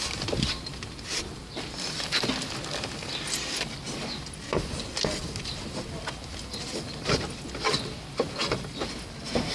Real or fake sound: real